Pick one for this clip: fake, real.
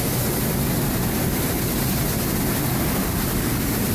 real